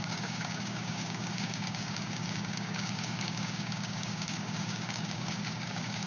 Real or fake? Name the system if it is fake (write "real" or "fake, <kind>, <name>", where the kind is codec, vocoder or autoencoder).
fake, codec, DAC